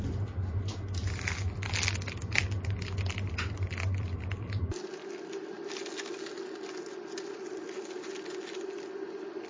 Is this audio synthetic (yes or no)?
no